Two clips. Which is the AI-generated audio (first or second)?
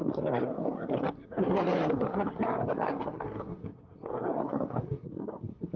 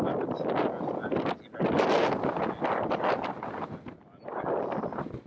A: first